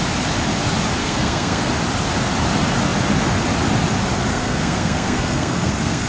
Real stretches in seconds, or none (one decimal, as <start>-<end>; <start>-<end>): 0.0-1.0; 1.7-4.3